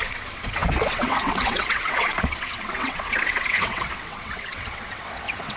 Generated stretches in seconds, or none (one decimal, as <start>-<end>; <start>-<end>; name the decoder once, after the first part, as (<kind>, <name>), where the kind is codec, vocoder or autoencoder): 0.0-5.6 (vocoder, WaveNeXt)